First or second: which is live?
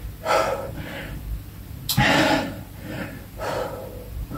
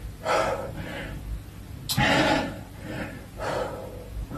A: second